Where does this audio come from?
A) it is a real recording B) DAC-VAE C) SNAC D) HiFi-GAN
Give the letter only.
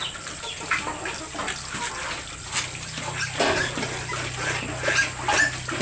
A